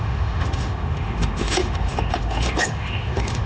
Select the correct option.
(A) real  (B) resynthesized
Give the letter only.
B